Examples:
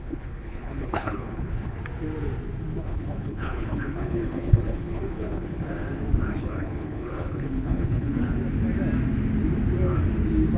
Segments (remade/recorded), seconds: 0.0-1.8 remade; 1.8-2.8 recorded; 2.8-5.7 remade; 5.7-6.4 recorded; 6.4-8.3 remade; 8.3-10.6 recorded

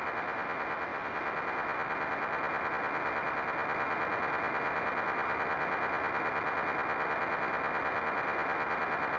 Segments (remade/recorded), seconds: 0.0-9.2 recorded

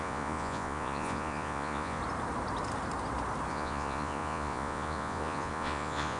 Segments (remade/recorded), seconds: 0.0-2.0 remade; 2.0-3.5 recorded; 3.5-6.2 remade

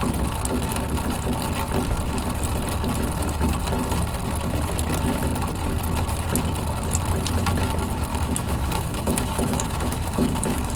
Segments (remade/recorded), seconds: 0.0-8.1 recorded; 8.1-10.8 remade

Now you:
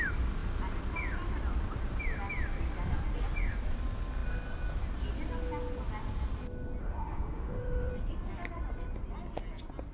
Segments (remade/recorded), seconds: 0.0-6.8 recorded; 6.8-7.9 remade; 7.9-9.9 recorded